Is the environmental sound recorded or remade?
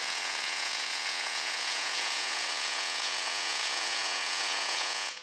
remade